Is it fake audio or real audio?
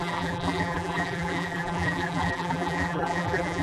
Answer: fake